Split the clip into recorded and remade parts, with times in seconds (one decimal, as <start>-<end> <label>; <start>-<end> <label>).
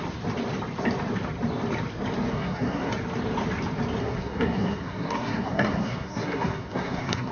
0.0-2.3 recorded; 2.3-2.9 remade; 2.9-4.0 recorded; 4.0-7.3 remade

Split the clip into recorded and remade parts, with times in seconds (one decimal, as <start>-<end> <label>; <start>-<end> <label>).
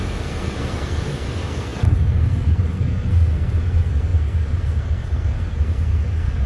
0.0-6.5 remade